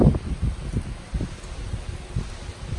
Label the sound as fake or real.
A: real